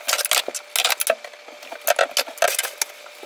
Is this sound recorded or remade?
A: recorded